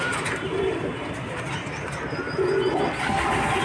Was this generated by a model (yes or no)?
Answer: no